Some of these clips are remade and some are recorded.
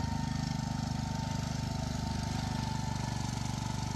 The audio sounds recorded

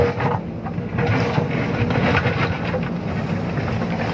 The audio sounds recorded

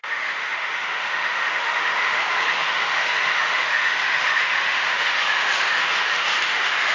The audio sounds remade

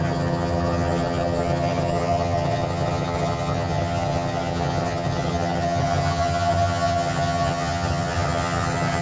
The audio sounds remade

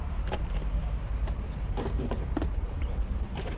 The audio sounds remade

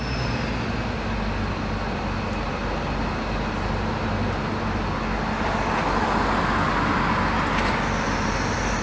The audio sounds recorded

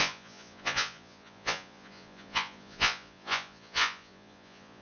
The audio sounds remade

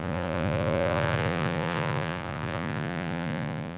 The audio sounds remade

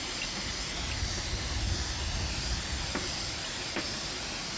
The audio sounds recorded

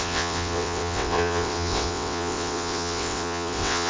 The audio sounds remade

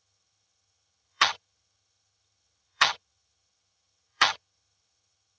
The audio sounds remade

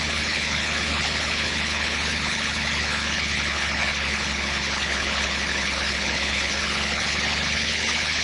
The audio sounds remade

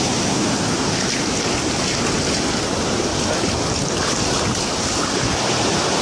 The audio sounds recorded